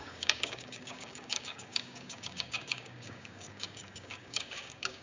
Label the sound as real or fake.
fake